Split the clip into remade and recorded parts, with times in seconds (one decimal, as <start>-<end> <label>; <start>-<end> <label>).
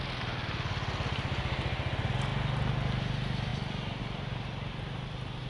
0.0-5.5 recorded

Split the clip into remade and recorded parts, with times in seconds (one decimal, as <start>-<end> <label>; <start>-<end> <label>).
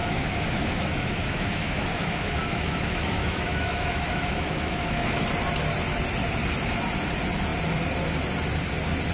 0.0-5.2 remade; 5.2-9.1 recorded